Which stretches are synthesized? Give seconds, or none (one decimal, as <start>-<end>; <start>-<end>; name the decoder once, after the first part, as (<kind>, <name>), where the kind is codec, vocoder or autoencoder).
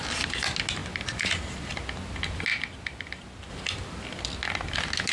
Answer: none